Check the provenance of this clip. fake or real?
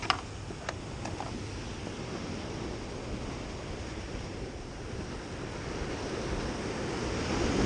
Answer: real